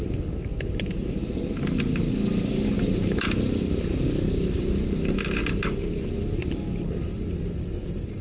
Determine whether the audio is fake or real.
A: real